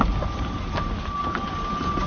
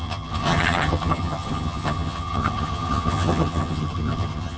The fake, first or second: second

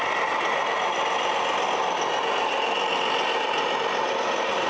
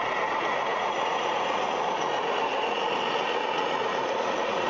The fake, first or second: second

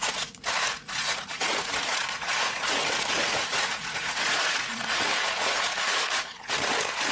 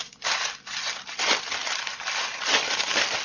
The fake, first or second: first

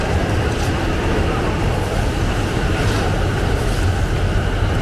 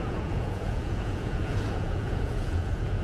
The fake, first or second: second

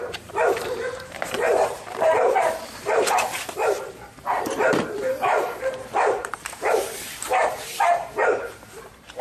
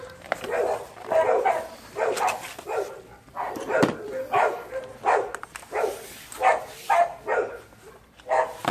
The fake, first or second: first